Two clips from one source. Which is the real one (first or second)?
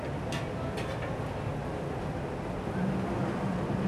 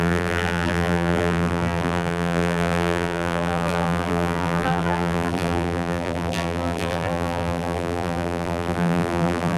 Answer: first